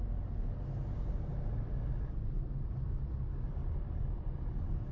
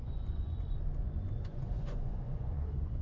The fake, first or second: second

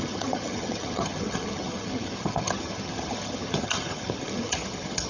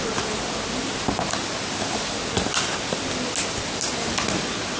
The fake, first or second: first